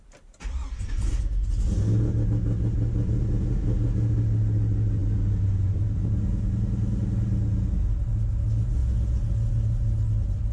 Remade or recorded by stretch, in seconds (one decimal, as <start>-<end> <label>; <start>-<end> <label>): 0.0-10.5 recorded

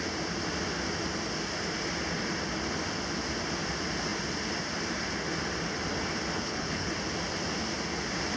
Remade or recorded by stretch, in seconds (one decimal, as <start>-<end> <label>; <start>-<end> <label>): 0.0-6.4 recorded; 6.4-6.9 remade; 6.9-8.4 recorded